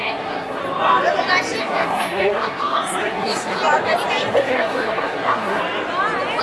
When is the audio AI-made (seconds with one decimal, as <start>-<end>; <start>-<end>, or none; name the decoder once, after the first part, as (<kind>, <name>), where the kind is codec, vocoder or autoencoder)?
0.0-0.6 (codec, SNAC); 1.6-3.6; 4.3-5.6